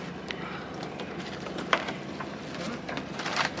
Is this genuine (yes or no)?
no